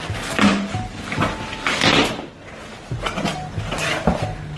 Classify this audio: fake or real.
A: real